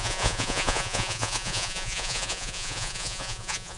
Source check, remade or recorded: remade